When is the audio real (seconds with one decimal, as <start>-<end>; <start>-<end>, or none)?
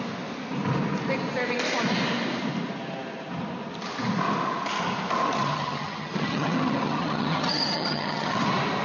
0.0-5.3; 8.4-8.8